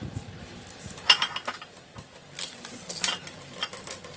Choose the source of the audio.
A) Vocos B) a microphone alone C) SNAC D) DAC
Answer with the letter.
B